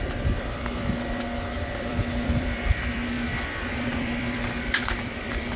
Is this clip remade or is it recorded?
remade